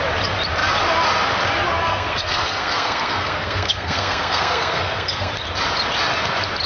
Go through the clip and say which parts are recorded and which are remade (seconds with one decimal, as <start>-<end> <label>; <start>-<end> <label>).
0.0-1.8 recorded; 1.8-5.3 remade; 5.3-6.7 recorded